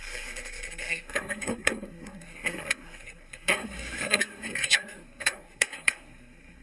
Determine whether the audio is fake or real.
fake